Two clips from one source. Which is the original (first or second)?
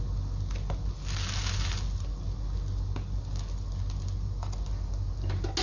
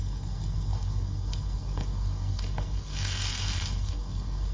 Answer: first